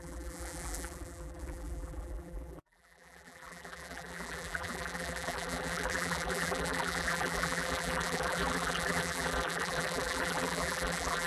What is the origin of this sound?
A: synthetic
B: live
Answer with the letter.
A